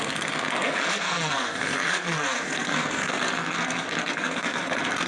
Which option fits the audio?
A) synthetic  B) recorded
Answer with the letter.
A